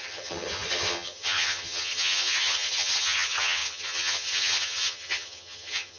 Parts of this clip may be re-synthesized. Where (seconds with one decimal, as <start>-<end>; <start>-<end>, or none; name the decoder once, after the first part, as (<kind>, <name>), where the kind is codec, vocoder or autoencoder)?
0.0-6.0 (vocoder, HiFi-GAN)